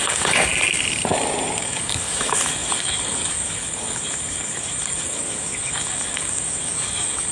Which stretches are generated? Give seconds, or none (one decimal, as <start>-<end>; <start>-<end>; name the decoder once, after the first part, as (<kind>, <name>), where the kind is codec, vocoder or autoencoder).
0.0-0.5 (codec, DAC); 1.6-7.3